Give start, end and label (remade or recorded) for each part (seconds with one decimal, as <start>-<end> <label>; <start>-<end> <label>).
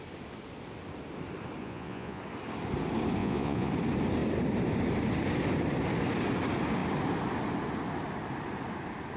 0.0-1.6 recorded; 1.6-2.2 remade; 2.2-3.2 recorded; 3.2-3.7 remade; 3.7-9.2 recorded